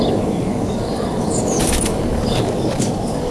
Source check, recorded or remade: remade